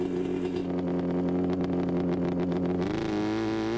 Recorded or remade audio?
recorded